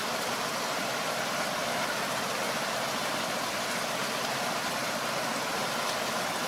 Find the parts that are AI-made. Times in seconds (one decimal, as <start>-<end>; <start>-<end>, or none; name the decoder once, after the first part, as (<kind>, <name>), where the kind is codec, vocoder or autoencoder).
0.0-1.2 (vocoder, BigVGAN v2)